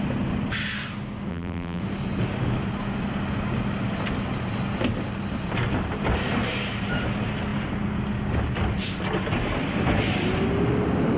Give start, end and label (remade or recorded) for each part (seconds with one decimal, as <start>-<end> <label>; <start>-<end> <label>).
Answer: 0.0-1.3 recorded; 1.3-1.8 remade; 1.8-11.2 recorded